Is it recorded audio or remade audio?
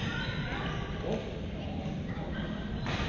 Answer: recorded